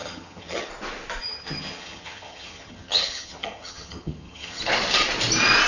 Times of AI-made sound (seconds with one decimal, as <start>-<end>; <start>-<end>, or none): 0.0-0.7; 1.2-4.6